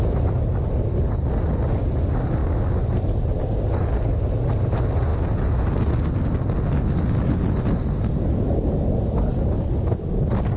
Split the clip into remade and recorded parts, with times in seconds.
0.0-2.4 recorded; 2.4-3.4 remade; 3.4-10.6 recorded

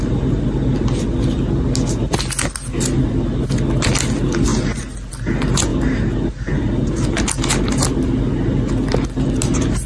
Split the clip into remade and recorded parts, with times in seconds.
0.0-9.9 recorded

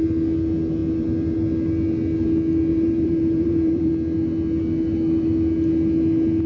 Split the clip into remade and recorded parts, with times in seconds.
0.0-2.7 recorded; 2.7-3.9 remade; 3.9-6.5 recorded

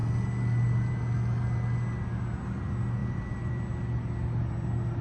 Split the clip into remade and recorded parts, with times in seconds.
0.0-3.0 recorded; 3.0-3.5 remade; 3.5-5.0 recorded

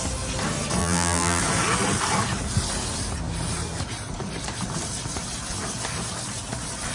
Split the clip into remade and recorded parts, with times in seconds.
0.0-0.8 recorded; 0.8-1.4 remade; 1.4-6.9 recorded

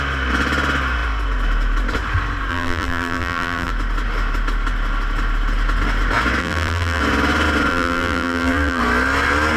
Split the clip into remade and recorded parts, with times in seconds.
0.0-2.5 recorded; 2.5-3.7 remade; 3.7-6.4 recorded; 6.4-7.0 remade; 7.0-7.7 recorded; 7.7-8.8 remade; 8.8-9.6 recorded